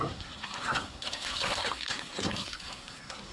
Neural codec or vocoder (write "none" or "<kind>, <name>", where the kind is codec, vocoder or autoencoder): codec, SNAC